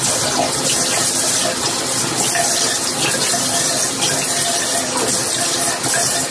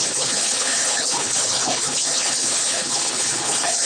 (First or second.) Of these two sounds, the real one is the first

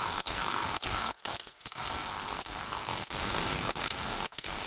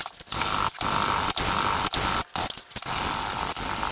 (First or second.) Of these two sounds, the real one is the second